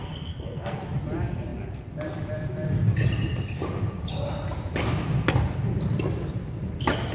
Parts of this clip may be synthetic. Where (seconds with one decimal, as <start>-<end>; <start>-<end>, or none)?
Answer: 0.0-0.8